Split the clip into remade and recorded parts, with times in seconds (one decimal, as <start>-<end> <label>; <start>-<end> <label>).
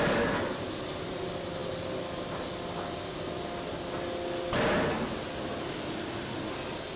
0.0-7.0 recorded